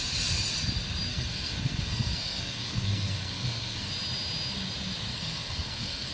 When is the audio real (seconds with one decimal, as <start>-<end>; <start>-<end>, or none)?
0.0-1.1; 3.9-5.1